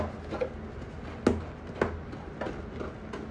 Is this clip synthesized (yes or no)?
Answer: no